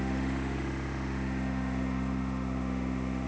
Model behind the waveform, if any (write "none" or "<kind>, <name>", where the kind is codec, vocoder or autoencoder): autoencoder, DAC-VAE